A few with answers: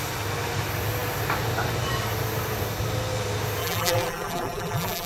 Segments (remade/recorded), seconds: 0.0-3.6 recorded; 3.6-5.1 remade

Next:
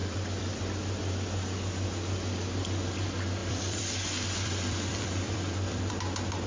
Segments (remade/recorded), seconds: 0.0-0.6 remade; 0.6-3.4 recorded; 3.4-5.9 remade; 5.9-6.5 recorded

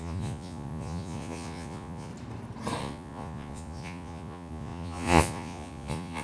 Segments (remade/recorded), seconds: 0.0-2.1 remade; 2.1-2.8 recorded; 2.8-6.2 remade